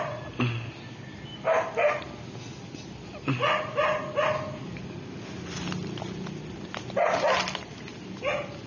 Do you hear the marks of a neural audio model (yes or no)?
no